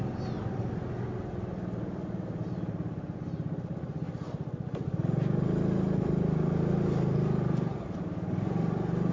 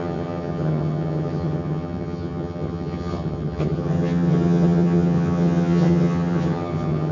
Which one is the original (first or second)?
first